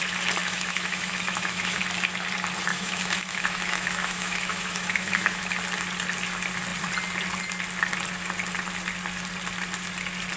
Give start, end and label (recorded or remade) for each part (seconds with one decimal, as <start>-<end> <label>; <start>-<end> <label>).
0.0-0.4 recorded; 0.4-1.8 remade; 1.8-2.7 recorded; 2.7-5.4 remade; 5.4-10.4 recorded